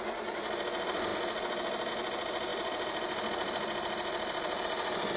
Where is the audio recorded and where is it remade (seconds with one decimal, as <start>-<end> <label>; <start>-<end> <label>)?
0.0-2.5 recorded; 2.5-4.6 remade; 4.6-5.2 recorded